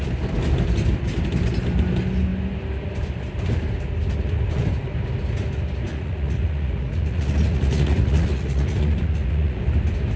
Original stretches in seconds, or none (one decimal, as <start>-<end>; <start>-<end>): 0.0-5.9; 9.6-10.2